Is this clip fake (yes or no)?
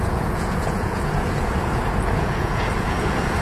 yes